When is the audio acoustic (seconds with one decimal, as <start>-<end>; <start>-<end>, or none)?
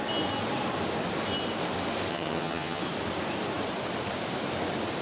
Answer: 0.0-2.1; 2.8-5.0